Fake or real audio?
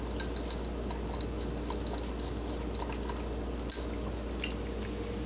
real